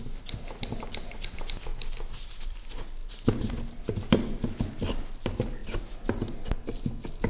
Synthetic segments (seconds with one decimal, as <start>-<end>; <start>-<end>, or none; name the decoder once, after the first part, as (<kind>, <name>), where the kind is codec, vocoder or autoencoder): 1.7-2.6 (vocoder, BigVGAN v2)